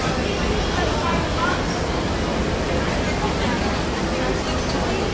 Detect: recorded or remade recorded